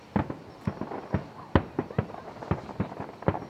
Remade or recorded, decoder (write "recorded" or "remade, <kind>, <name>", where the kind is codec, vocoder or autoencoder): recorded